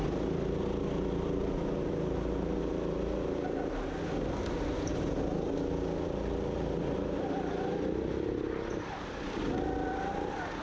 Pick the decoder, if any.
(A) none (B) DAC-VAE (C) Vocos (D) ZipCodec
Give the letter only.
A